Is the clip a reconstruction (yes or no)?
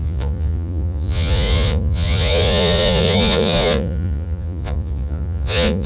yes